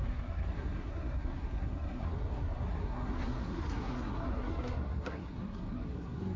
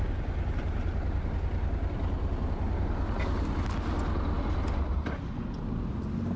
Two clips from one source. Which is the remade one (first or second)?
first